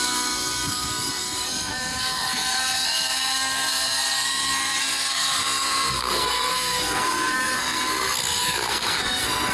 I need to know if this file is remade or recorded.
remade